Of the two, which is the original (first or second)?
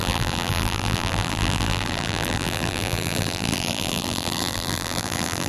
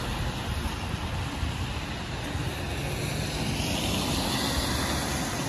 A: second